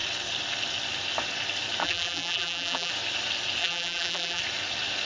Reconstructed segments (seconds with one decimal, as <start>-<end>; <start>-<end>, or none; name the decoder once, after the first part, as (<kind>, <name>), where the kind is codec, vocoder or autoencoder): 1.8-2.9 (vocoder, BigVGAN v2); 3.6-4.4